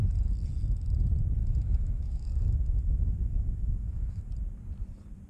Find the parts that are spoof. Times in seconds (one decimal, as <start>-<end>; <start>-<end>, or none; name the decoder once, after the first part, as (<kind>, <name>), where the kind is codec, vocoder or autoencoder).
1.4-4.3 (autoencoder, DAC-VAE)